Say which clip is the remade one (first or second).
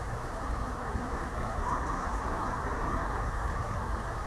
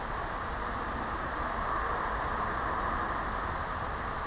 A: first